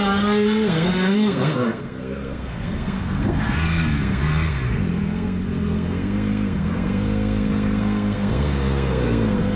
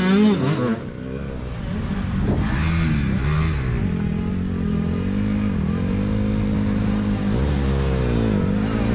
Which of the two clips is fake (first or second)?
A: first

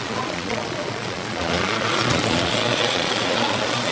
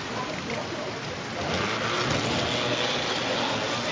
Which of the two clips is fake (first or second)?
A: first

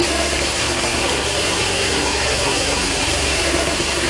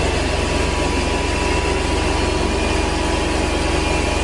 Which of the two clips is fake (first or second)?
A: first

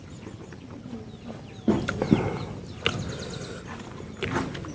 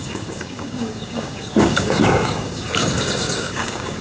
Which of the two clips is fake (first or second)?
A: second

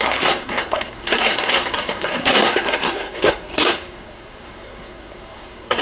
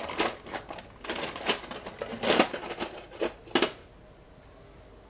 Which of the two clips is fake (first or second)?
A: first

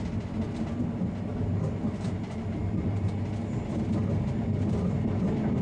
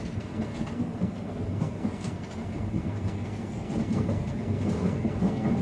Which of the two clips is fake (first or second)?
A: second